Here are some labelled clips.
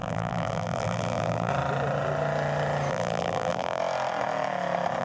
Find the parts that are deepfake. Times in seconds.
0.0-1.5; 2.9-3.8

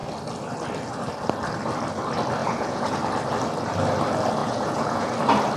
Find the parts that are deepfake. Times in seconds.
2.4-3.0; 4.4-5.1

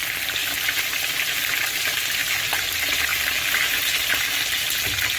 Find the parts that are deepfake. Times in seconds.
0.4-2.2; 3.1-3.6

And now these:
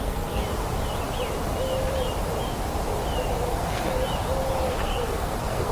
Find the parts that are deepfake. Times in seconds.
0.0-0.4; 3.5-3.9; 4.7-5.7

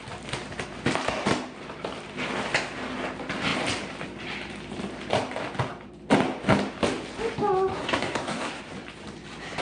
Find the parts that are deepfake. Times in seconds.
7.7-8.6